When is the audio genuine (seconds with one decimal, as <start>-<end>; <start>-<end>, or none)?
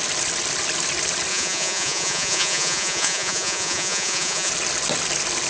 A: 0.0-1.3; 4.5-5.5